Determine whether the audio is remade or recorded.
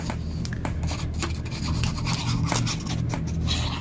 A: recorded